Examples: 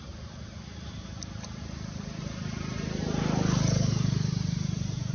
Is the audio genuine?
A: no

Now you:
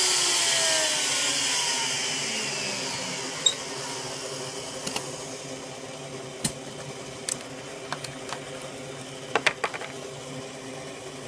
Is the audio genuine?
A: yes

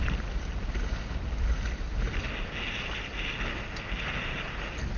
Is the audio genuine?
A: yes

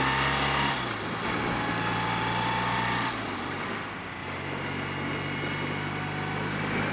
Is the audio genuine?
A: yes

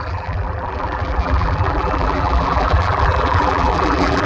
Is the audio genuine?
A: no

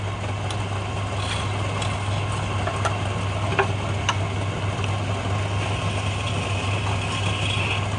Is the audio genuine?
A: yes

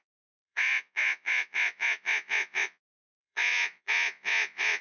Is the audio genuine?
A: no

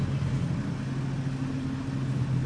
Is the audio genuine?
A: yes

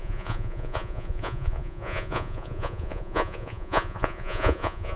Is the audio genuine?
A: no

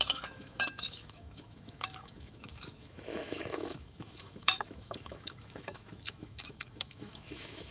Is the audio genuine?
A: no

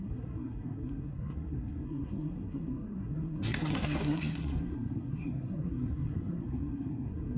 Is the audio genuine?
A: no